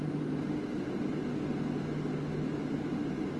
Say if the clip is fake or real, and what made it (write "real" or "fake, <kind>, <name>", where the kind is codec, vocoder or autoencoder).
real